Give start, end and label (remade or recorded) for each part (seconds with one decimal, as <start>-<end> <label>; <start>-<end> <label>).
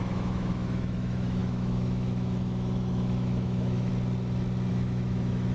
0.0-3.9 remade; 3.9-4.7 recorded; 4.7-5.5 remade